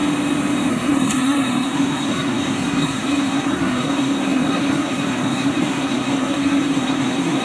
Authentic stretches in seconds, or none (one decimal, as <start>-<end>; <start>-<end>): 0.0-0.7